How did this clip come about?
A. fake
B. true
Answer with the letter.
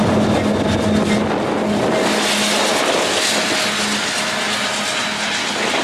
B